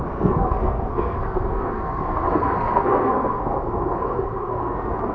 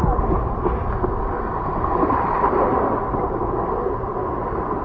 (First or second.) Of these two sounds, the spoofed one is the first